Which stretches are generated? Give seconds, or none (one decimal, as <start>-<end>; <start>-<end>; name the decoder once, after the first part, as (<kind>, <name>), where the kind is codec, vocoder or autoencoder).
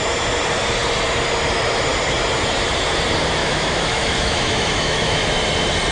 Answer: 3.4-5.2 (autoencoder, DAC-VAE)